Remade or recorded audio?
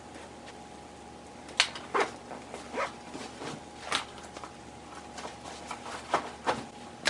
recorded